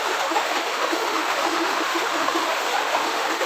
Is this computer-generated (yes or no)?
yes